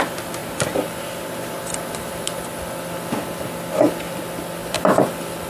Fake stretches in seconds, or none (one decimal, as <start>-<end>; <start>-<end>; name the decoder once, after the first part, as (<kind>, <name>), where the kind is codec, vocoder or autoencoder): none